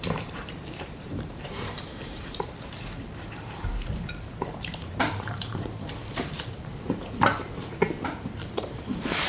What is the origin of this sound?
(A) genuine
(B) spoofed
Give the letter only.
B